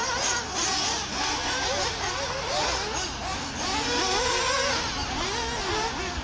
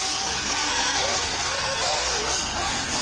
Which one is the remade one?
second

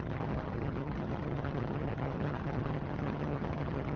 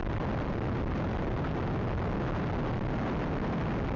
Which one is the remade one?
first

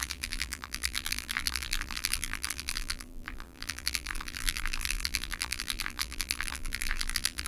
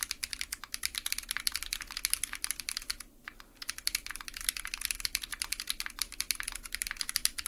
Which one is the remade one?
first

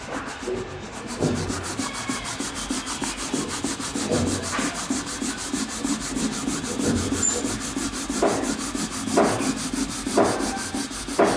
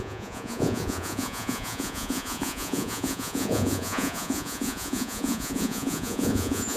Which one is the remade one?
second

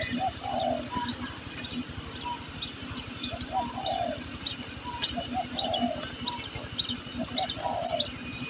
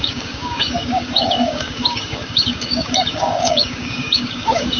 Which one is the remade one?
second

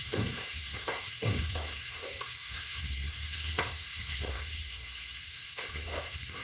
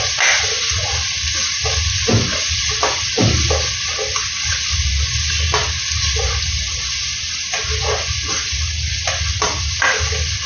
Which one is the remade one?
first